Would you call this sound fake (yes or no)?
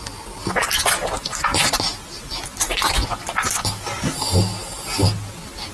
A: no